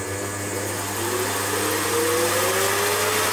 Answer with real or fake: real